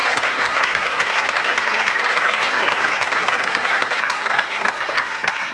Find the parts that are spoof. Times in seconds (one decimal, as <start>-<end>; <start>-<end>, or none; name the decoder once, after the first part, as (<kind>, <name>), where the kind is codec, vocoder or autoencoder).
0.0-5.5 (codec, SNAC)